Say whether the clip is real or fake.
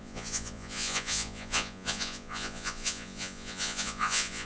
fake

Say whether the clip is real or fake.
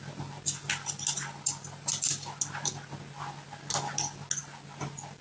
real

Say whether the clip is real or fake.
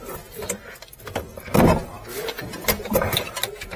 real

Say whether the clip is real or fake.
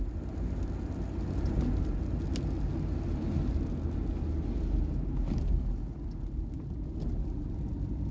real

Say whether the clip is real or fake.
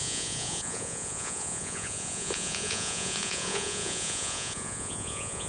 fake